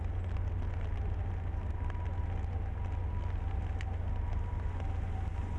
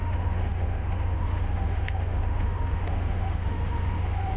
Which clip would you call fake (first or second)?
second